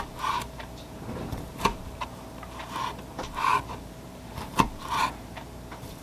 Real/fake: fake